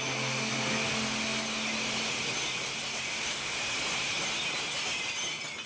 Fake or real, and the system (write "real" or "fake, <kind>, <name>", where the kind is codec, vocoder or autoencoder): real